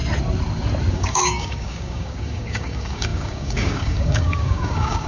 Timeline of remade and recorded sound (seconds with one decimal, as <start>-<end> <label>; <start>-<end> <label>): 0.0-0.9 recorded; 0.9-5.1 remade